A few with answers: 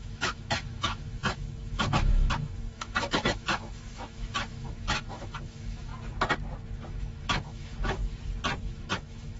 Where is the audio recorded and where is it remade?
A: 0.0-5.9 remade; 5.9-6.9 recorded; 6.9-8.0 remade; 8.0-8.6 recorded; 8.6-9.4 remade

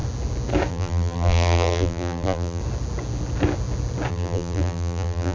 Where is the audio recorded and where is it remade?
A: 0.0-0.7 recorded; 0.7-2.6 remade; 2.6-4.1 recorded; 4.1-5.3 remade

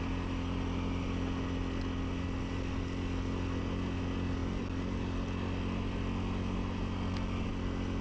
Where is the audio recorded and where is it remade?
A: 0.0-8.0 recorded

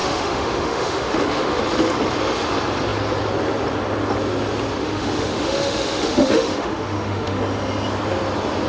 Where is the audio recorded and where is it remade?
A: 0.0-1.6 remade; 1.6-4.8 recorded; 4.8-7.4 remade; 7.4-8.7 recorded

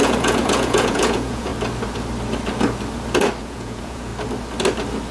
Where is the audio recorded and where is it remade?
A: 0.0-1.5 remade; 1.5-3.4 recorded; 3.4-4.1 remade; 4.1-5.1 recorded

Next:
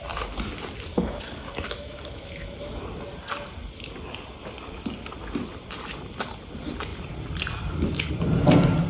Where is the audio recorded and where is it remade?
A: 0.0-0.9 recorded; 0.9-2.8 remade; 2.8-8.9 recorded

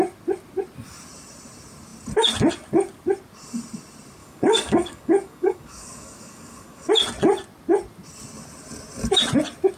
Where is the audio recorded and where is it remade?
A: 0.0-4.2 recorded; 4.2-6.9 remade; 6.9-9.8 recorded

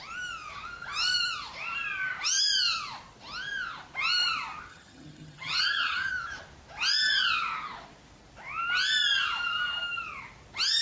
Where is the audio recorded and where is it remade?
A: 0.0-4.7 recorded; 4.7-6.1 remade; 6.1-10.8 recorded